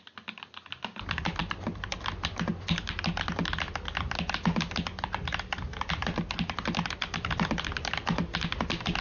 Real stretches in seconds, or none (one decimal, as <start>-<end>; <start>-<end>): 0.0-9.0